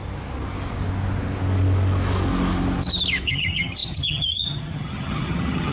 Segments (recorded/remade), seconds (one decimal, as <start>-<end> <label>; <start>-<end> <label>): 0.0-3.3 recorded; 3.3-5.7 remade